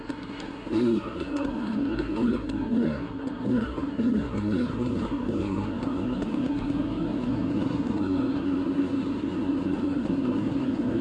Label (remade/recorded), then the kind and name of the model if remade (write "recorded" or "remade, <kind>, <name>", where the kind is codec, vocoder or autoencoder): remade, codec, SNAC